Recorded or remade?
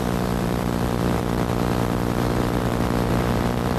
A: remade